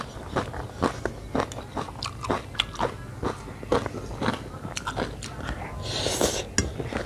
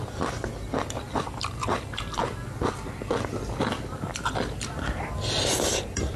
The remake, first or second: second